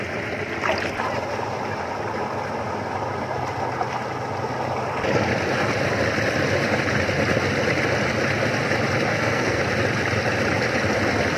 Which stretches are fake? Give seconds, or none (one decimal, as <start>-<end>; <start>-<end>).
9.1-9.6